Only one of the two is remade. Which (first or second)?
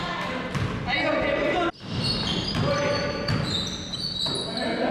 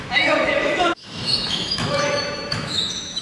second